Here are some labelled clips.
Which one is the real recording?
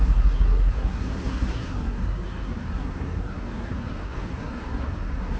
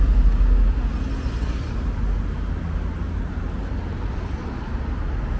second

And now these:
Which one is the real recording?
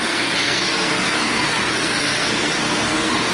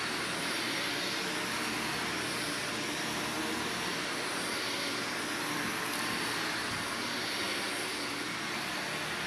second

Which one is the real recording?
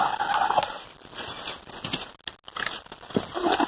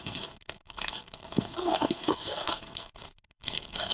first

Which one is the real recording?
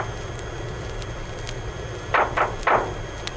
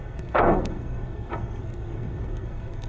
first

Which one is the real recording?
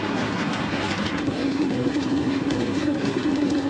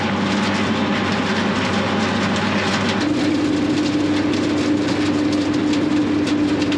second